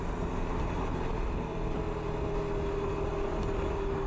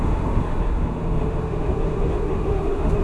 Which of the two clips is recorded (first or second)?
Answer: first